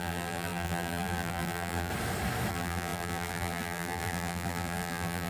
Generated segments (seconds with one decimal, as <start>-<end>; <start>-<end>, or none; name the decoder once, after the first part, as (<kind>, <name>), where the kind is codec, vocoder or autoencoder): 0.0-1.9 (vocoder, BigVGAN v2); 2.5-5.3